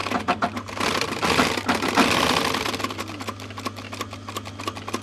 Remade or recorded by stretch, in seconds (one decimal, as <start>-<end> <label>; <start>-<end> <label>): 0.0-3.0 remade; 3.0-5.0 recorded